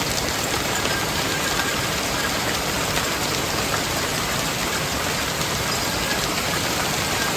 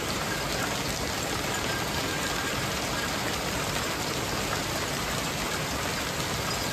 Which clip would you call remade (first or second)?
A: first